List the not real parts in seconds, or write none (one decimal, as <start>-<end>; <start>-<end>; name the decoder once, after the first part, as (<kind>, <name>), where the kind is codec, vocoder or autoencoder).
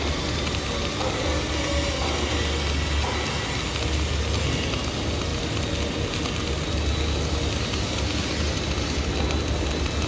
none